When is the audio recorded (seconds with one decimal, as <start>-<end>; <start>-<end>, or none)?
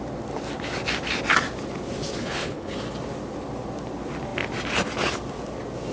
0.0-2.2; 2.7-5.9